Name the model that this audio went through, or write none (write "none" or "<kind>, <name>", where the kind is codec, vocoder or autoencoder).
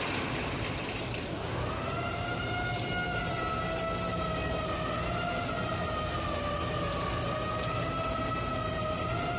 none